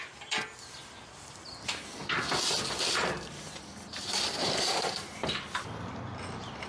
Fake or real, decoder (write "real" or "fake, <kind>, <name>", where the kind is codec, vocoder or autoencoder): fake, vocoder, BigVGAN v2